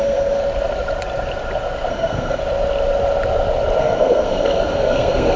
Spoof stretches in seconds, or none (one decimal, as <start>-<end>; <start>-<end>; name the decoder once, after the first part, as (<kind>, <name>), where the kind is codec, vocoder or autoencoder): 0.0-0.4 (codec, SNAC); 1.9-2.4; 3.8-5.4